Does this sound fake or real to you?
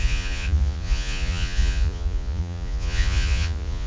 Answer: fake